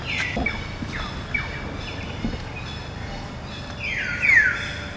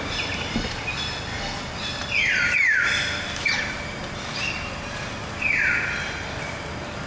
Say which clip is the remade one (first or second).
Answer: second